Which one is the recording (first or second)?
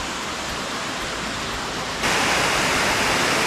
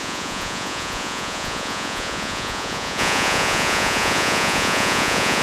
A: first